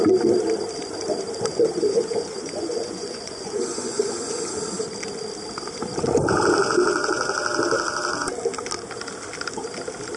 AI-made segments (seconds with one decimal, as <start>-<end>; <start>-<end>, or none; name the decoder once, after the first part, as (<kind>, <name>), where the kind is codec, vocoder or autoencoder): 1.5-4.5 (vocoder, Vocos)